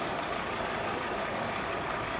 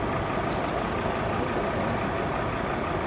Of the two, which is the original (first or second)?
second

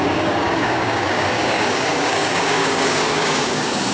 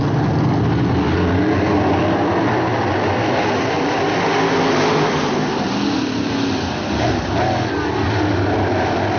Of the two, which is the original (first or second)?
second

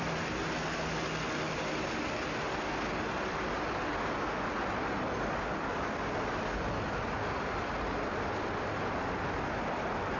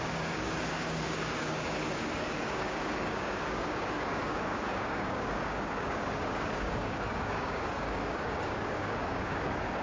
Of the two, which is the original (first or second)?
first